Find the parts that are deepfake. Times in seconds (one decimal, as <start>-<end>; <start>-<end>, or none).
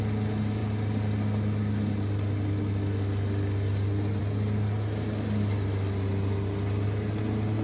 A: none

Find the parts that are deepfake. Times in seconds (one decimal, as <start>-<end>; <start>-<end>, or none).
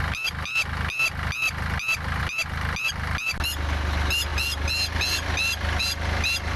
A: none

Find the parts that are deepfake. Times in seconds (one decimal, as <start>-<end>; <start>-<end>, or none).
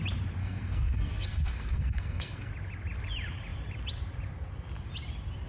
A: 0.4-2.5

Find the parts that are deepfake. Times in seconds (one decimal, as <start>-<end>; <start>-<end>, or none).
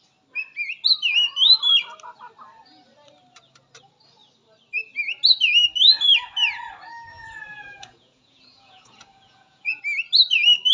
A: 7.1-9.8